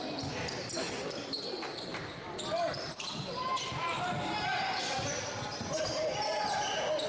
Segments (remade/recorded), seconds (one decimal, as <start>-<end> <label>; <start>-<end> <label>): 0.0-7.1 recorded